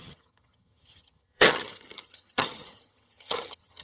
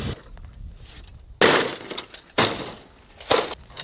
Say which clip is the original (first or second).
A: second